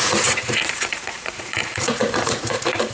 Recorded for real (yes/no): no